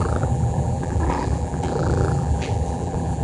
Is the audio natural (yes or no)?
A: no